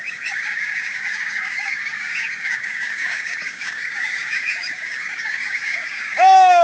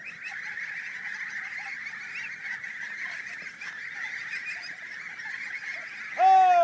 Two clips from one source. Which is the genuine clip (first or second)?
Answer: second